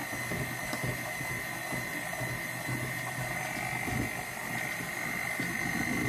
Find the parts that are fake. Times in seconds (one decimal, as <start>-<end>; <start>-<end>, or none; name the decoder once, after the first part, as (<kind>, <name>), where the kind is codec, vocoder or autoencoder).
none